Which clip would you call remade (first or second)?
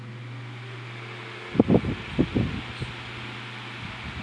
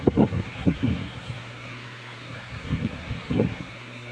second